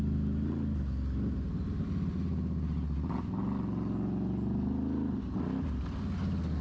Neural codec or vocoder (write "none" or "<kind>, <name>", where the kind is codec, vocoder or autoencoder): none